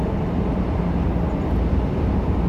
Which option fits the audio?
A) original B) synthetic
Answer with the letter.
A